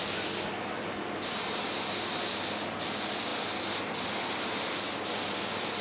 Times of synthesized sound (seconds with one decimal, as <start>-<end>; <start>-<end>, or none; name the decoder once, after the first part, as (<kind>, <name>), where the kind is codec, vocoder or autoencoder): none